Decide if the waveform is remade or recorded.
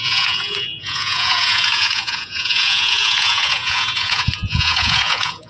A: remade